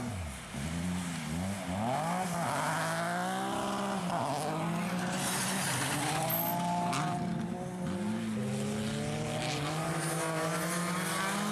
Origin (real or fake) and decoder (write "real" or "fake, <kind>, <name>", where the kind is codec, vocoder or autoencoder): real